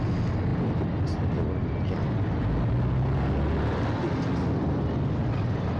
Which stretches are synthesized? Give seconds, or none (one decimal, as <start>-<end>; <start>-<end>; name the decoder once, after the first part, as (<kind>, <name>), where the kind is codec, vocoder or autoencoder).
none